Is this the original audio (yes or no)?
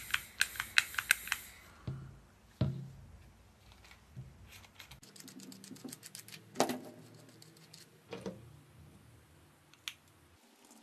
yes